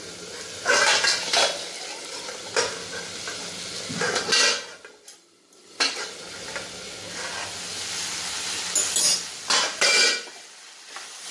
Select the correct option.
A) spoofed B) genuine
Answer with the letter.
B